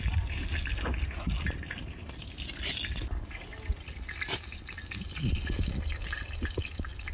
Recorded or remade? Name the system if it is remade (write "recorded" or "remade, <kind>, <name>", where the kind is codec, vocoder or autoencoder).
recorded